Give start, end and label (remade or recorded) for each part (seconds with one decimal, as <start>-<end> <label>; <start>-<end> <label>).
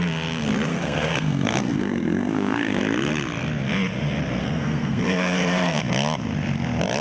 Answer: 0.0-0.7 recorded; 0.7-2.8 remade; 2.8-4.4 recorded; 4.4-5.8 remade; 5.8-7.0 recorded